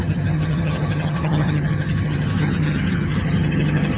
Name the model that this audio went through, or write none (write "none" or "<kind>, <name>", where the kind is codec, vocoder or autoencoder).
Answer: vocoder, HiFi-GAN